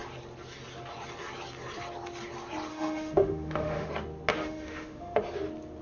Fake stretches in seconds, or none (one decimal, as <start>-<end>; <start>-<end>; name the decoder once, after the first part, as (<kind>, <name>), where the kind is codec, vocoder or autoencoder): 2.7-3.9 (autoencoder, DAC-VAE); 4.3-5.2